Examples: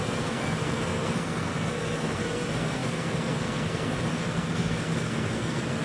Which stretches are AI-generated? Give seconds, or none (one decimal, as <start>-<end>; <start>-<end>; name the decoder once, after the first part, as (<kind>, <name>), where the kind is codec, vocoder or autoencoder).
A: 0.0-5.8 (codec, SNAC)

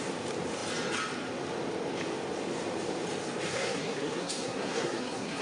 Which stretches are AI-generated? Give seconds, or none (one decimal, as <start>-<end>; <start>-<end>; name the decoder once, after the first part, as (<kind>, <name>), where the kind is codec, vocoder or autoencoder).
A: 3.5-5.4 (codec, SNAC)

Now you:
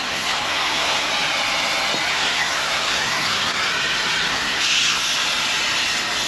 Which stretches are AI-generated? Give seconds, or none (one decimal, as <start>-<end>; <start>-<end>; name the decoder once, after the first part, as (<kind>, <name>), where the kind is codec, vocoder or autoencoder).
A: 0.0-1.1 (codec, SNAC); 2.1-3.7; 4.3-5.0

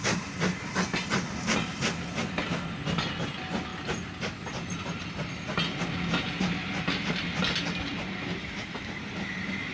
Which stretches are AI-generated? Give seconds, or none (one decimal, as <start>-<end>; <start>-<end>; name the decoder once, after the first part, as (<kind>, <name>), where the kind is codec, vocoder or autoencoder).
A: none

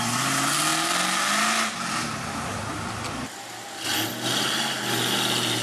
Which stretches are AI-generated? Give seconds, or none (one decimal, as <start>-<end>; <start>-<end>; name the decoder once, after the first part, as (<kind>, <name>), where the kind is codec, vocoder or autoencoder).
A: none

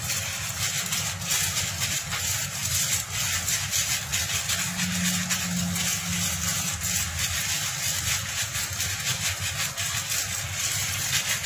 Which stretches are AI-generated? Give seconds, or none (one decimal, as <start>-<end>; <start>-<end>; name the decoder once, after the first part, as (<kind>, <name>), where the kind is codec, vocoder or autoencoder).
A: none

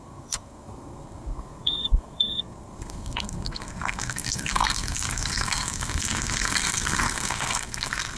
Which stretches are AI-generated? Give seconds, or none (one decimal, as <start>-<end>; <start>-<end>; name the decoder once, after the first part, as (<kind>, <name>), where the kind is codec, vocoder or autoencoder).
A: 0.0-8.2 (codec, SNAC)

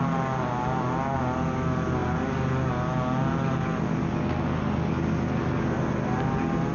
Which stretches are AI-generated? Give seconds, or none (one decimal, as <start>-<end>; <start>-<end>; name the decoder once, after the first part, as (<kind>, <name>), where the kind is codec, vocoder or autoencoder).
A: none